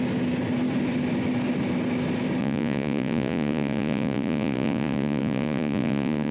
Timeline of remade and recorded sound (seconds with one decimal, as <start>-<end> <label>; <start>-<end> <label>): 0.0-2.4 recorded; 2.4-6.3 remade